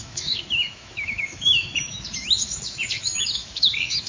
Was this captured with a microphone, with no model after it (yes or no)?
no